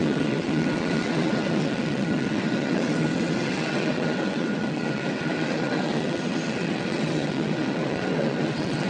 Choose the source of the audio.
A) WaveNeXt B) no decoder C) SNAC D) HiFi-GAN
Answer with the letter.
A